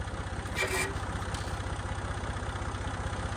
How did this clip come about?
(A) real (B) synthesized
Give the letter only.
A